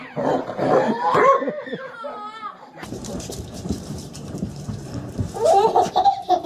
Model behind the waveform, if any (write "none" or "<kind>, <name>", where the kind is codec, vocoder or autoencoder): vocoder, BigVGAN v2